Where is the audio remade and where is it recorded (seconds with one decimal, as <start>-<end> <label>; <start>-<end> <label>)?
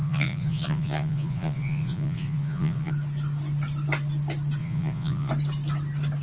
0.0-2.9 remade; 2.9-4.6 recorded; 4.6-5.3 remade; 5.3-6.2 recorded